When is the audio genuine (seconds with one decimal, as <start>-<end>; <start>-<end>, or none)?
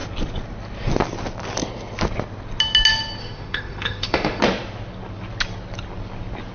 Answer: 0.0-3.2; 4.4-6.5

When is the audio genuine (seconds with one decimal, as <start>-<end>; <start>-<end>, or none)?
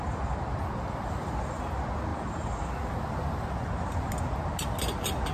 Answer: 0.0-5.3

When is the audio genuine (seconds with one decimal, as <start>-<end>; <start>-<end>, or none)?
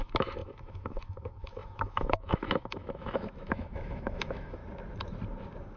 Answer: 4.6-5.8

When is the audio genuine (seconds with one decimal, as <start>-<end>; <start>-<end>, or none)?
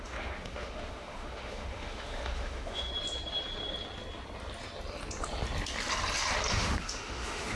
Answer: 2.9-6.5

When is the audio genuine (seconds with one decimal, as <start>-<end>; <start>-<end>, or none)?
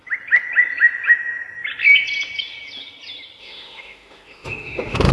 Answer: 0.0-3.4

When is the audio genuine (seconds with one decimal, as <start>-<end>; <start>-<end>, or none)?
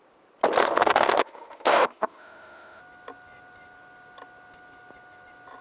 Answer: 0.0-0.6; 2.8-5.6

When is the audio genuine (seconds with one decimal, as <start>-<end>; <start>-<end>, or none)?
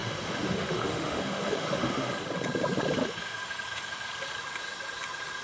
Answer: 2.1-3.0; 4.1-5.4